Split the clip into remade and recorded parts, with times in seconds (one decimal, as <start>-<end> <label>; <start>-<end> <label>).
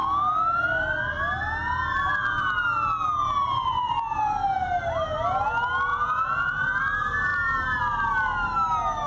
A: 0.0-5.9 recorded; 5.9-6.8 remade; 6.8-9.1 recorded